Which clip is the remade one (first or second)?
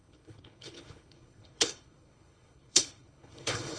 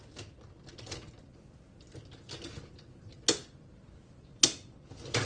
first